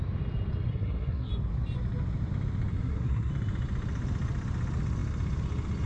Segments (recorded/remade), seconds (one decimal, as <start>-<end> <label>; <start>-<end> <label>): 0.0-0.7 recorded; 0.7-1.3 remade; 1.3-2.7 recorded; 2.7-3.3 remade; 3.3-5.9 recorded